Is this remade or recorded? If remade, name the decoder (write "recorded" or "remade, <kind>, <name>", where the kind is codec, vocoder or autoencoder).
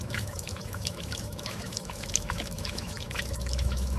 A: remade, autoencoder, DAC-VAE